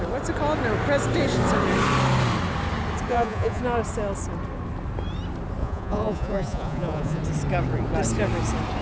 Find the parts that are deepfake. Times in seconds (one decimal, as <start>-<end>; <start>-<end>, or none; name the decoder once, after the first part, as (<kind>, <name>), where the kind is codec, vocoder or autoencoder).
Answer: 3.1-3.6 (vocoder, Vocos); 5.6-7.2